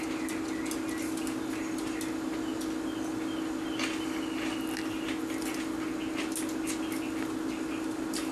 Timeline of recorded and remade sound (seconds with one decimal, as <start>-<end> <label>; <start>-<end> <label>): 0.0-8.3 recorded